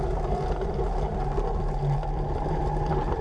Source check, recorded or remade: recorded